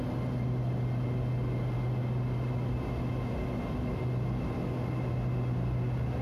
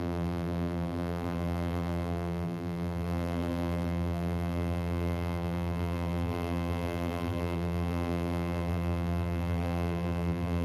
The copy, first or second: second